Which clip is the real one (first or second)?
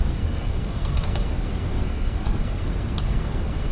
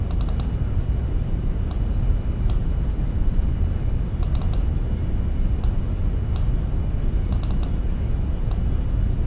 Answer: second